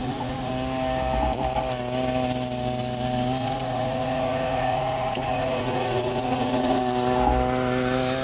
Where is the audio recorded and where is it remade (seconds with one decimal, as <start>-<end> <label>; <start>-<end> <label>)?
0.0-0.5 remade; 0.5-3.4 recorded; 3.4-6.8 remade; 6.8-8.2 recorded